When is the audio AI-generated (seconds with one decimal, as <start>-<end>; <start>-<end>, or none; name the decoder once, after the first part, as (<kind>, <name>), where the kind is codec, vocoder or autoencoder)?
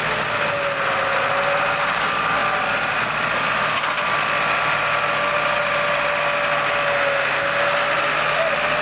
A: none